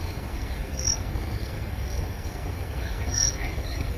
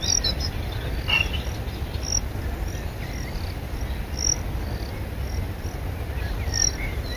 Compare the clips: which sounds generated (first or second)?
first